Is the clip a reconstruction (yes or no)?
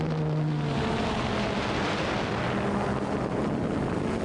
no